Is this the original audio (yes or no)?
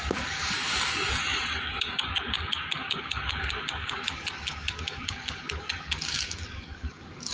no